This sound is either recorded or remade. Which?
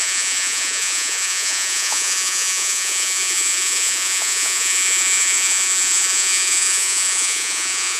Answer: remade